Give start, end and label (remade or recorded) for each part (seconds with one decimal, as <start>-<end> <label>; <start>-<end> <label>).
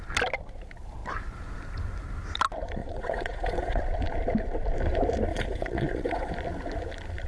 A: 0.0-2.8 recorded; 2.8-3.8 remade; 3.8-5.3 recorded; 5.3-6.3 remade; 6.3-7.3 recorded